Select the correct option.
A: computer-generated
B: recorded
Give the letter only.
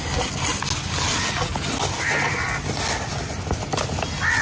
B